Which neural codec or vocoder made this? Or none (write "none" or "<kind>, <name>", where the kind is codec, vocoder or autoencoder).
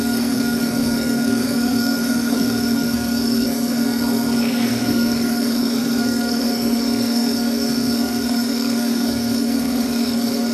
codec, SNAC